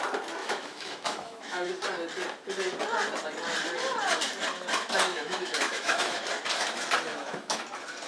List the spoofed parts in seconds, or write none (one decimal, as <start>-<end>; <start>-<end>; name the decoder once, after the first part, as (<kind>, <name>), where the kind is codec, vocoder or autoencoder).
0.4-1.7 (autoencoder, DAC-VAE); 5.1-6.2; 7.1-7.6